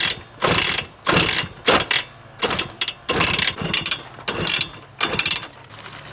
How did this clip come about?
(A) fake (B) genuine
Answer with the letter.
B